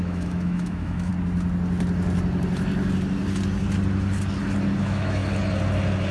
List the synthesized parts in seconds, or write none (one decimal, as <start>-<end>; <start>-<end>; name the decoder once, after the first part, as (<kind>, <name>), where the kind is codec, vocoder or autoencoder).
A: 0.0-1.1 (autoencoder, DAC-VAE); 4.8-5.2